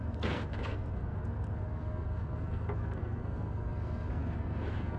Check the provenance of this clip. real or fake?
fake